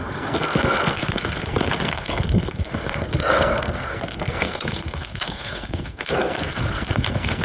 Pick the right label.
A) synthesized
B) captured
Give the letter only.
A